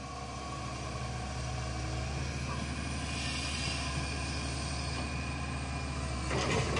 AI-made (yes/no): no